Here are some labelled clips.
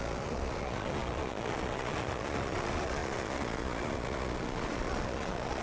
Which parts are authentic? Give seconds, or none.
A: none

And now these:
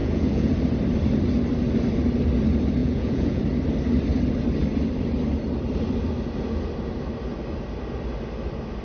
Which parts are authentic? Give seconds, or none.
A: 0.6-2.8; 3.4-8.8

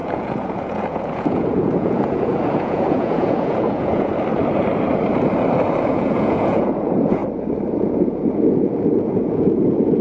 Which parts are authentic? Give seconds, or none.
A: 4.1-5.8; 7.2-7.8

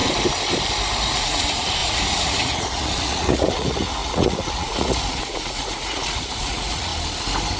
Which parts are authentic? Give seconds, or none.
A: 0.0-1.2; 6.9-7.6

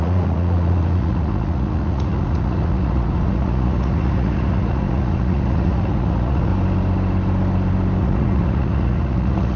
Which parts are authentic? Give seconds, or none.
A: 6.5-8.0